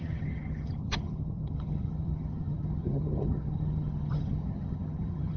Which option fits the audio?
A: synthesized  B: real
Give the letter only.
A